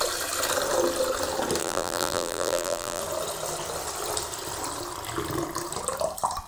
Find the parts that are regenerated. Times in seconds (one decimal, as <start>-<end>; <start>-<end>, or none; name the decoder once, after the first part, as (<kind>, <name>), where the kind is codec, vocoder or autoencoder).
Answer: 1.6-3.0 (vocoder, BigVGAN v2)